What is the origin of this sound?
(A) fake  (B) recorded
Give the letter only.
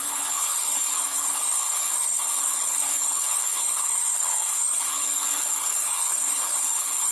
A